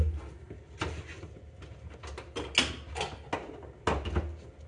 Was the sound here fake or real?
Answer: real